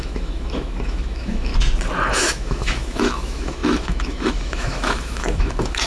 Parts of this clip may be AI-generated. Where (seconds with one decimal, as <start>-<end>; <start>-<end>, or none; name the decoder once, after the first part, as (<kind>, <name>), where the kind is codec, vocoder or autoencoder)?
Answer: 0.0-1.5 (autoencoder, DAC-VAE); 2.1-5.9